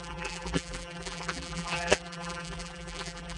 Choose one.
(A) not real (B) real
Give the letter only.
A